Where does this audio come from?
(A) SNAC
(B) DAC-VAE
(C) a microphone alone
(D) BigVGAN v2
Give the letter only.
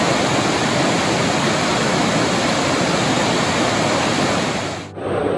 C